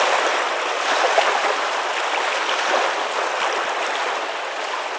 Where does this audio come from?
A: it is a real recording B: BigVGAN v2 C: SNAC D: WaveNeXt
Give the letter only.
A